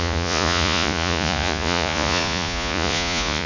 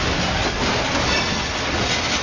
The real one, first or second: second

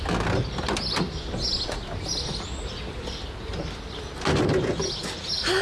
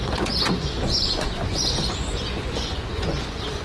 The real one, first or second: first